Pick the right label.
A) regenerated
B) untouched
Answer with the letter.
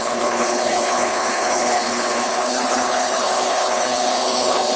A